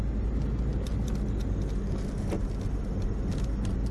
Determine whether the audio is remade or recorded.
recorded